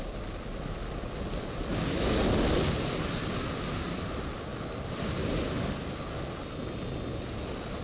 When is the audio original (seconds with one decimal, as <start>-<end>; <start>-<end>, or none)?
0.0-7.8